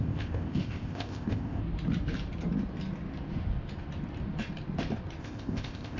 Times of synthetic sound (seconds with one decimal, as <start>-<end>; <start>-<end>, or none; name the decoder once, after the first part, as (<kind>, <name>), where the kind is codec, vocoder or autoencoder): 0.0-1.6 (codec, ZipCodec); 5.2-6.0